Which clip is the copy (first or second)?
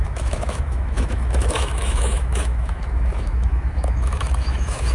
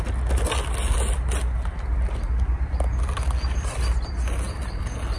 first